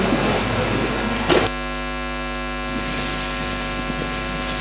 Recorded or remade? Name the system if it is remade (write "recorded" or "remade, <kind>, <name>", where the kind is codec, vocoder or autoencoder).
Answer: recorded